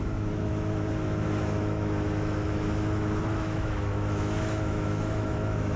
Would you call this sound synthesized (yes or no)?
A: yes